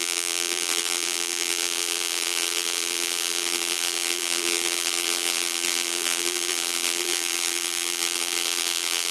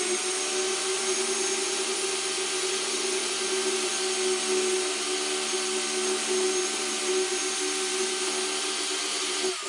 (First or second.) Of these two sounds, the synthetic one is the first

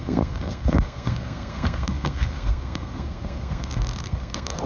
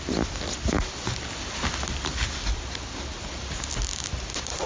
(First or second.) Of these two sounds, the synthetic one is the first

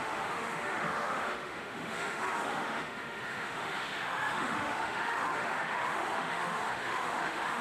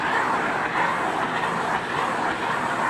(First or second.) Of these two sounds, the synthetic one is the first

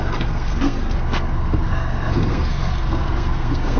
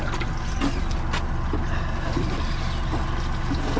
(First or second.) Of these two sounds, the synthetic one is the first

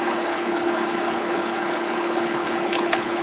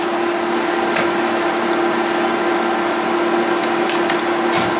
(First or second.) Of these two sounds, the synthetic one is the first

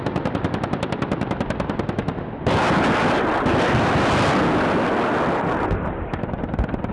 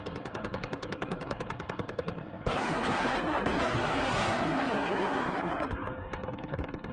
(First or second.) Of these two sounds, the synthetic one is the second